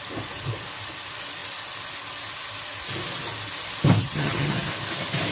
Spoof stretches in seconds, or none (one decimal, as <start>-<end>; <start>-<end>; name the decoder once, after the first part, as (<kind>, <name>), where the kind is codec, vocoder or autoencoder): 4.0-4.7 (vocoder, HiFi-GAN)